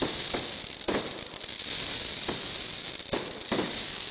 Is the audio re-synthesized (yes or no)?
no